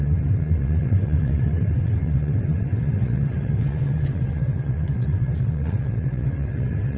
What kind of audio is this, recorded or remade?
remade